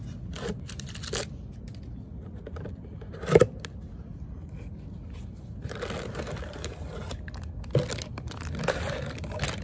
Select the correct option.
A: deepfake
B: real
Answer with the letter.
B